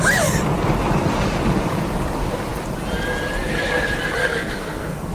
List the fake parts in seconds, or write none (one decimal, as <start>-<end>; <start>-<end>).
4.2-5.1